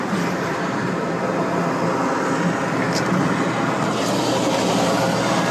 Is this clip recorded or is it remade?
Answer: recorded